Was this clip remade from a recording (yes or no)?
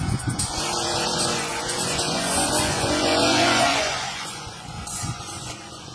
yes